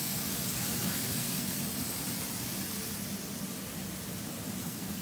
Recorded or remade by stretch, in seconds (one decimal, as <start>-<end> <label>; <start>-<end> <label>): 0.0-1.6 remade; 1.6-4.6 recorded; 4.6-5.0 remade

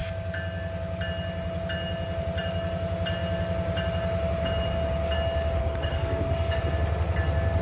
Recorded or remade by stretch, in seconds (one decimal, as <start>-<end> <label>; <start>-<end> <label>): 0.0-5.6 recorded; 5.6-6.6 remade; 6.6-7.6 recorded